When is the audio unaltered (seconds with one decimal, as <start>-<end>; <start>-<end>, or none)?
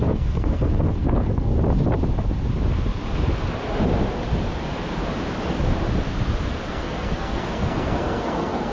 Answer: 1.5-6.7